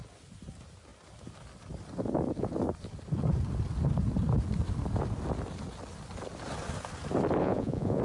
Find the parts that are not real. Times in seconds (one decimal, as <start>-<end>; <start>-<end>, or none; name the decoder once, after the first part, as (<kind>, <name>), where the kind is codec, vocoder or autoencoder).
7.4-8.0 (vocoder, Vocos)